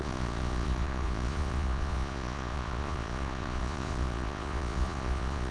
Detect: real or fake fake